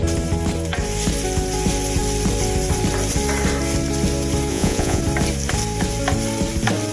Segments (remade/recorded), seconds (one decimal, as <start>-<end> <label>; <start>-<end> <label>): 0.0-4.5 recorded; 4.5-5.0 remade; 5.0-6.9 recorded